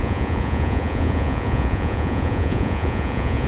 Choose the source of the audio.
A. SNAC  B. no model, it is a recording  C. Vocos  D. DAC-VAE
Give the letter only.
C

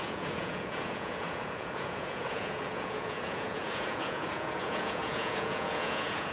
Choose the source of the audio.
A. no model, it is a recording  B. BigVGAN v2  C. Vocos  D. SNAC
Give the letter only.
C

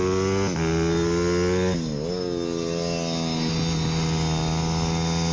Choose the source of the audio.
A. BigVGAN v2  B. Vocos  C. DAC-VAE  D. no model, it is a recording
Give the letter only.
D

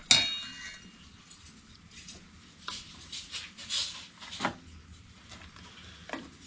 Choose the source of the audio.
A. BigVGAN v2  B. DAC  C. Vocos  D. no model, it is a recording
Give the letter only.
D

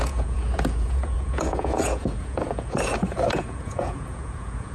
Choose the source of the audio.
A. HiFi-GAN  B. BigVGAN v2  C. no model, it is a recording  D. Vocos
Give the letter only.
D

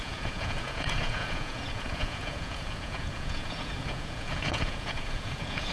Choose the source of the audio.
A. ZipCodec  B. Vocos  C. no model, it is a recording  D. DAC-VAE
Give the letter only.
B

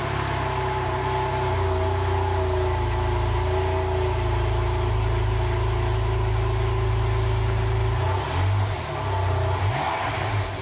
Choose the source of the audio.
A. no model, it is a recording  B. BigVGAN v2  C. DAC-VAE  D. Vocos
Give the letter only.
A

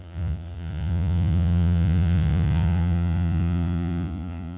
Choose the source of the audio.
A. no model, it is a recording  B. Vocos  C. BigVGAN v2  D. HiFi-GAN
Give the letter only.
B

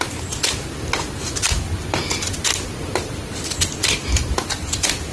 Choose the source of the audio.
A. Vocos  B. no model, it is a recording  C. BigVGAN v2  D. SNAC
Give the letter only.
B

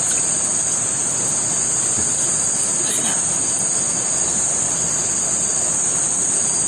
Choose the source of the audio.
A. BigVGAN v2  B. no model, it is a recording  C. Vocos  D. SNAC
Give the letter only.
B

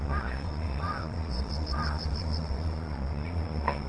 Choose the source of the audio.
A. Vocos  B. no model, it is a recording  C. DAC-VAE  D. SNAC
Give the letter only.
A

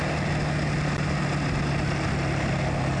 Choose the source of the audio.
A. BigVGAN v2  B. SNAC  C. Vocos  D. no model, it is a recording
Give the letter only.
D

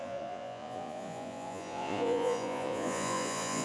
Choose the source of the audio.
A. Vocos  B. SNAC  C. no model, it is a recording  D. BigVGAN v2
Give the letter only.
A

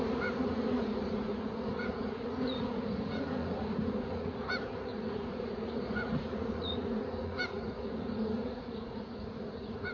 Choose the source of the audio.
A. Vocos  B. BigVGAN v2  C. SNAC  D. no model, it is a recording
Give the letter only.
A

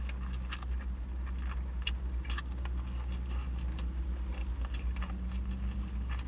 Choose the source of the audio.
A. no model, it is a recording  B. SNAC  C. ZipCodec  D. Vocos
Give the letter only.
A